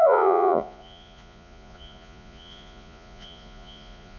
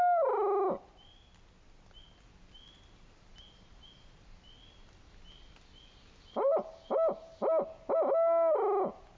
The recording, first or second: second